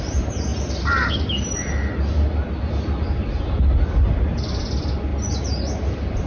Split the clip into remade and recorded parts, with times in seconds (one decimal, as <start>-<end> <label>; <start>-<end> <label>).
0.0-6.3 recorded